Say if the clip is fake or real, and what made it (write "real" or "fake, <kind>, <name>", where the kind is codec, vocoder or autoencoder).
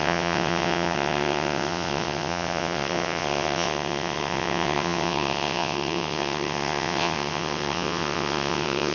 fake, vocoder, WaveNeXt